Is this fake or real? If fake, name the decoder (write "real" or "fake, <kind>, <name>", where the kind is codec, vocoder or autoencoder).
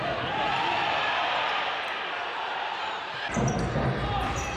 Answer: fake, vocoder, BigVGAN v2